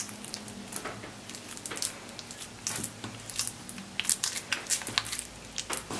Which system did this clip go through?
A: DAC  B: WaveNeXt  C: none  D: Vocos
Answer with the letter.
C